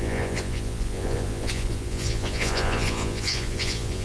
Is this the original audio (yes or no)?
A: no